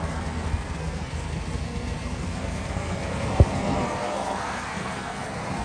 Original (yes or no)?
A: no